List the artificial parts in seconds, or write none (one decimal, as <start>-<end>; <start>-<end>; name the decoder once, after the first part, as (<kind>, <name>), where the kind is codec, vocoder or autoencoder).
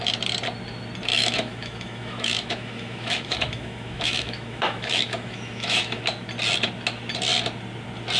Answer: 1.1-6.0 (autoencoder, DAC-VAE)